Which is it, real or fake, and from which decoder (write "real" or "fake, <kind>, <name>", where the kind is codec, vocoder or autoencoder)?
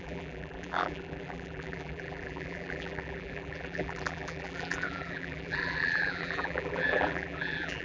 fake, vocoder, BigVGAN v2